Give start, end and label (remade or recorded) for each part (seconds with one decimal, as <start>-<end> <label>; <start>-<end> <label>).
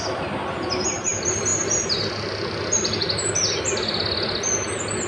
0.0-5.1 recorded